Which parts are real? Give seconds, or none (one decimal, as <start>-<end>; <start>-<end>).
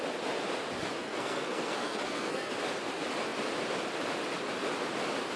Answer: 0.0-1.0; 2.5-5.4